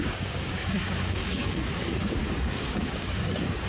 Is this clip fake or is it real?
fake